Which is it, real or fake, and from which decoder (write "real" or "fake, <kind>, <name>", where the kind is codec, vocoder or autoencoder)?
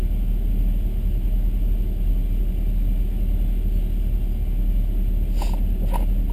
real